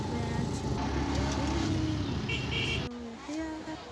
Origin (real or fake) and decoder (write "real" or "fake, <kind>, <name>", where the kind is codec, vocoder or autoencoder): real